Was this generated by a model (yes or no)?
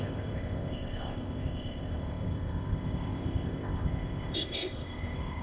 yes